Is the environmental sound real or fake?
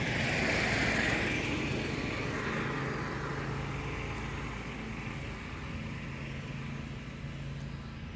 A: real